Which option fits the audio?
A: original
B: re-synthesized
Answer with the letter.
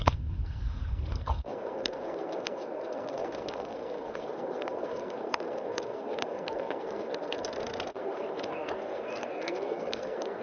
B